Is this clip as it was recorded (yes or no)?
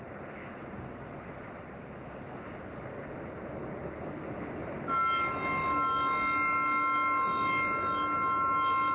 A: yes